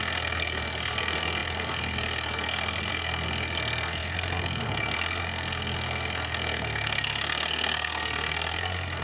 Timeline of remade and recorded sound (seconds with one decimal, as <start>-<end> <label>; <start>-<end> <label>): 0.0-9.0 remade